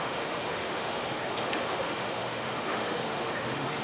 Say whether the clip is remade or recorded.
remade